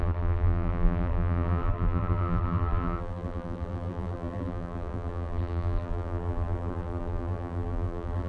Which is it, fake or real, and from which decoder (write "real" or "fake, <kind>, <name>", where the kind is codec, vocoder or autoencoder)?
fake, vocoder, BigVGAN v2